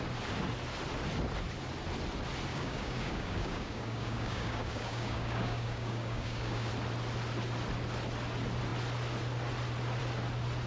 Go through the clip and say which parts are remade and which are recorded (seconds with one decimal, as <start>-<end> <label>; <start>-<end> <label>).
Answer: 0.0-2.5 recorded; 2.5-6.7 remade; 6.7-10.7 recorded

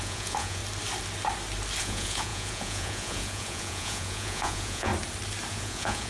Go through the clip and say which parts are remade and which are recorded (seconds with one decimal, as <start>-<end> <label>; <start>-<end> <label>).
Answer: 0.0-0.6 remade; 0.6-1.8 recorded; 1.8-4.9 remade; 4.9-5.5 recorded; 5.5-6.1 remade

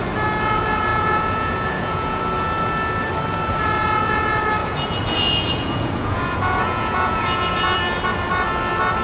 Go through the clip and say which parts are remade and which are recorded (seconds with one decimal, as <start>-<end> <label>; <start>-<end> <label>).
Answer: 0.0-0.9 recorded; 0.9-2.2 remade; 2.2-4.6 recorded; 4.6-7.8 remade; 7.8-9.0 recorded

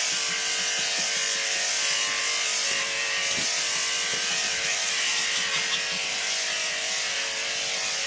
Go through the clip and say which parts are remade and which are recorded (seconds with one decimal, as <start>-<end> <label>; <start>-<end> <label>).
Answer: 0.0-0.4 remade; 0.4-2.2 recorded; 2.2-8.1 remade

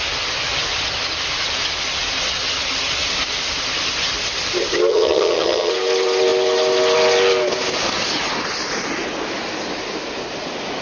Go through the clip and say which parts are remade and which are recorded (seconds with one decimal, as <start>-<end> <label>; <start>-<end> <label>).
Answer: 0.0-4.9 recorded; 4.9-5.7 remade; 5.7-10.8 recorded